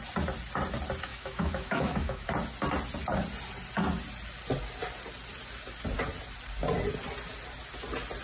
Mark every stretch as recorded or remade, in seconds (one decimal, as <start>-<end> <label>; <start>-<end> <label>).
0.0-1.1 recorded; 1.1-2.3 remade; 2.3-8.2 recorded